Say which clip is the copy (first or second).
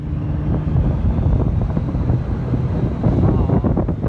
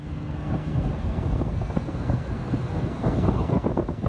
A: second